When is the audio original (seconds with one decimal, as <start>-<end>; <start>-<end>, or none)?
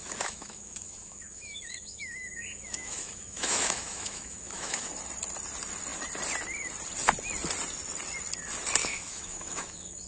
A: 4.9-8.8